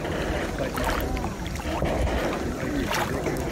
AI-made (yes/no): no